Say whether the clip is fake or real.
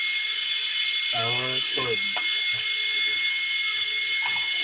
fake